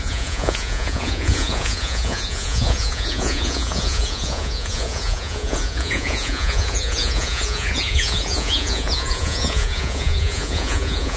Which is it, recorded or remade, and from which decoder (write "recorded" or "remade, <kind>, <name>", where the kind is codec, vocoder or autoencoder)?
remade, vocoder, Vocos